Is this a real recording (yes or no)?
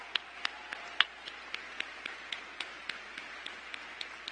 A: yes